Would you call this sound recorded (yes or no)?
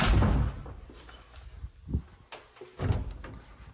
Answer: yes